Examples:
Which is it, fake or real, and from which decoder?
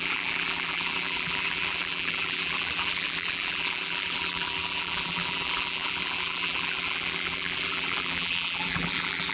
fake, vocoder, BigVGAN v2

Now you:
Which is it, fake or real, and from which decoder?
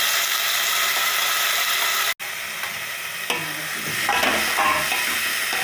real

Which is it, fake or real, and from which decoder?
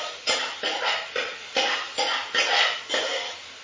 real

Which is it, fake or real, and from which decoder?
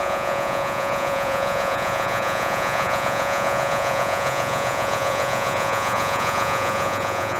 fake, vocoder, Vocos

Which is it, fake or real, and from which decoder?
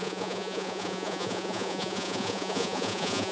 fake, vocoder, Vocos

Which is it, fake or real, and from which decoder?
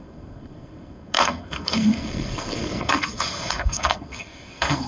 fake, codec, SNAC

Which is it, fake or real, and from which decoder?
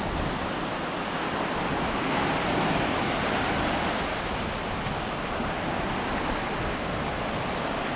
real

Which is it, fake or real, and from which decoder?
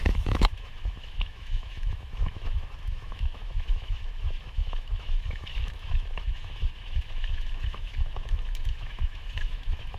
fake, autoencoder, DAC-VAE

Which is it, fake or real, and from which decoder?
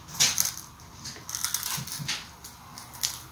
real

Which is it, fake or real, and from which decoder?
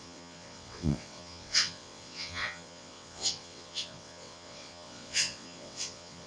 fake, vocoder, WaveNeXt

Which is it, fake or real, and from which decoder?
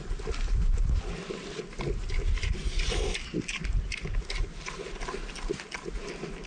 real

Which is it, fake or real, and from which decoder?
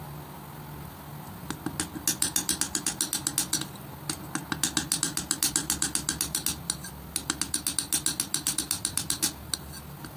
real